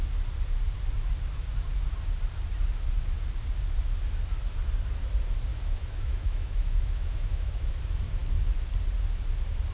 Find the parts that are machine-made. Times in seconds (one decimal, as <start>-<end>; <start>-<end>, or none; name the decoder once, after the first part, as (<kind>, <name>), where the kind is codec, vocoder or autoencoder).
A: 5.5-7.7 (autoencoder, DAC-VAE)